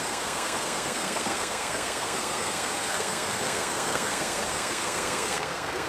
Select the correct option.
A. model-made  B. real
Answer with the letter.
A